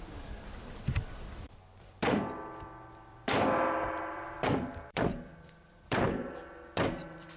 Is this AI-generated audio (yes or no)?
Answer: yes